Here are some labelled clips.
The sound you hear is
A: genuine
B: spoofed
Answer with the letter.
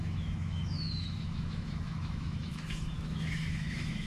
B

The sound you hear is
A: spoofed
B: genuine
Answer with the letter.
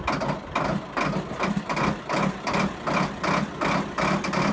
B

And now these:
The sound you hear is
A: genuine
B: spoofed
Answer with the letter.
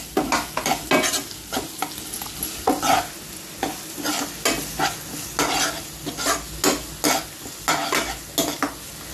A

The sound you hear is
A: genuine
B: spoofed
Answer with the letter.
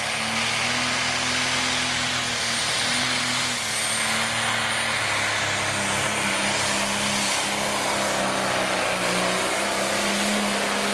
A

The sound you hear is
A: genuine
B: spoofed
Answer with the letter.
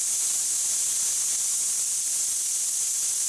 A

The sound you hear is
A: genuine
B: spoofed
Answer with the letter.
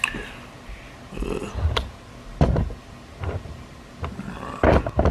A